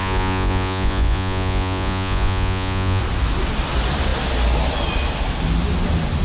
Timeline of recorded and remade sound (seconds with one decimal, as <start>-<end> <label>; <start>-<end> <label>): 0.0-3.0 remade; 3.0-6.2 recorded